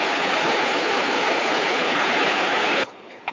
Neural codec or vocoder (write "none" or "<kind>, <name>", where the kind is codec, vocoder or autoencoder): codec, HILCodec